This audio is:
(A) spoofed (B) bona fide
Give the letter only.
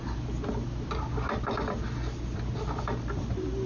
B